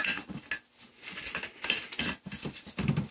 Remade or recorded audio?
recorded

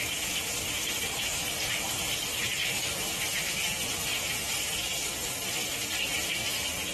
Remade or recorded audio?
recorded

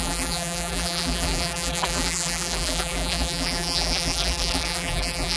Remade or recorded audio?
remade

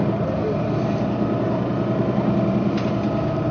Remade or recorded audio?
recorded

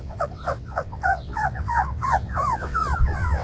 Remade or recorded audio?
remade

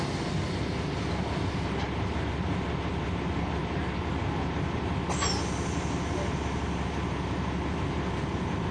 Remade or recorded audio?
recorded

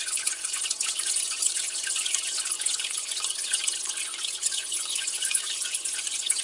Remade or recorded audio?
remade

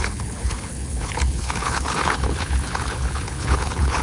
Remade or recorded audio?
remade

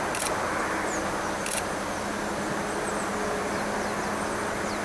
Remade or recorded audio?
recorded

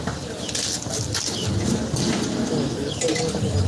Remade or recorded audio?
recorded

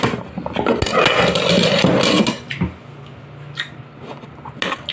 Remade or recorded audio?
recorded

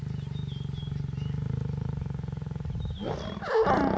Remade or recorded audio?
recorded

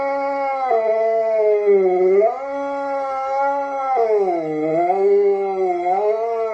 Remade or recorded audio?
recorded